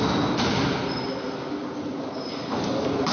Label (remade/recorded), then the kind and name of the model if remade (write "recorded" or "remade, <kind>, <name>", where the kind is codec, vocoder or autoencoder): recorded